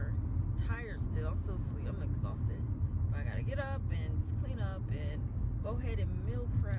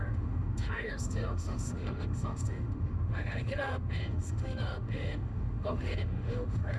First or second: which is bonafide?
first